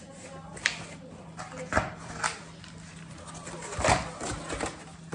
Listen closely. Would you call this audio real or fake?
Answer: real